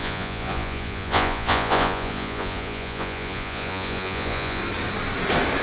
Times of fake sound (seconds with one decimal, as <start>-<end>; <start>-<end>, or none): 0.0-4.6